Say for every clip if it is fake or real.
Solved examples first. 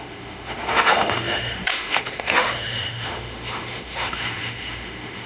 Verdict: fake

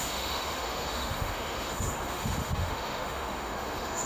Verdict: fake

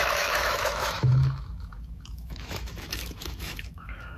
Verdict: fake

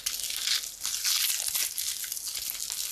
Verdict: real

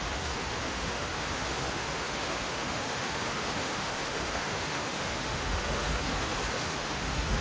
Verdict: fake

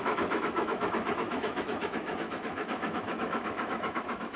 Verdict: fake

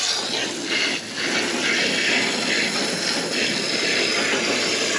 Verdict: real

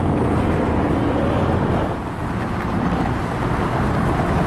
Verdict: real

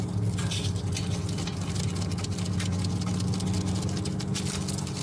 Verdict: real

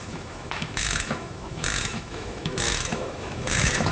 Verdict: fake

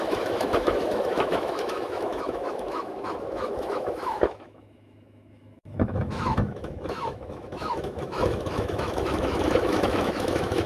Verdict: fake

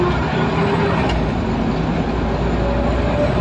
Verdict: real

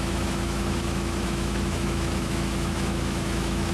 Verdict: fake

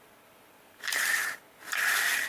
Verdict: real